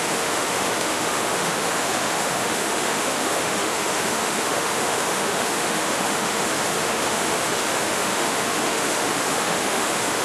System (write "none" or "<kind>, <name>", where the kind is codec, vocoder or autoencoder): autoencoder, DAC-VAE